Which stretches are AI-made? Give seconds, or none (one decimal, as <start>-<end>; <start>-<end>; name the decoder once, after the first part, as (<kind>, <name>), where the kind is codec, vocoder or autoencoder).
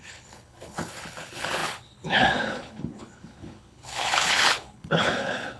0.0-5.6 (codec, HILCodec)